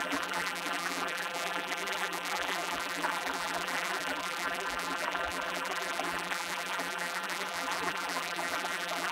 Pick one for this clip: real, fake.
fake